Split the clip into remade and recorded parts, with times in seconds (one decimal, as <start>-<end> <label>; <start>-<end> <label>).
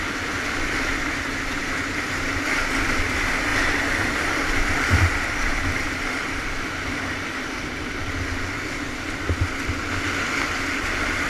0.0-3.5 recorded; 3.5-5.3 remade; 5.3-11.3 recorded